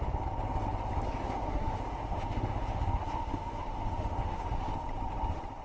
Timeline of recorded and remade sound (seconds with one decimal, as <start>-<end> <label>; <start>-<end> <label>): 0.0-1.2 recorded; 1.2-4.6 remade; 4.6-5.6 recorded